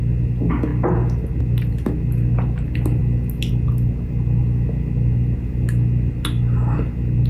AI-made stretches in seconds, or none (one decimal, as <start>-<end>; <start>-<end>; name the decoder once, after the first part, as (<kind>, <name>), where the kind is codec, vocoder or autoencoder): none